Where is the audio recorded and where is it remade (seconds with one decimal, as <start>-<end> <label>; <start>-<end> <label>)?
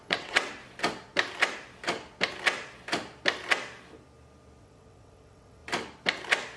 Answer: 0.0-0.6 remade; 0.6-4.6 recorded; 4.6-5.6 remade; 5.6-6.6 recorded